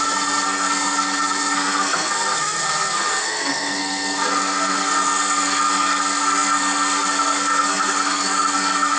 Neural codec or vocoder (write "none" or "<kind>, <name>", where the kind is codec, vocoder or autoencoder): codec, SNAC